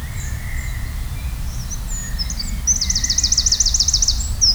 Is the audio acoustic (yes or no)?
yes